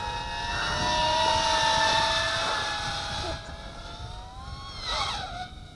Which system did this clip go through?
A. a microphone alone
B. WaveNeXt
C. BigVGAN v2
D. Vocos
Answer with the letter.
A